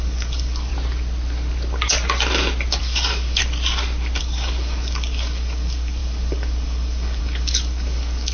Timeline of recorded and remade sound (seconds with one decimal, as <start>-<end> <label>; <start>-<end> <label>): 0.0-0.7 remade; 0.7-2.8 recorded; 2.8-3.4 remade; 3.4-4.2 recorded; 4.2-8.3 remade